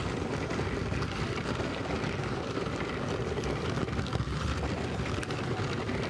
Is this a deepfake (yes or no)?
no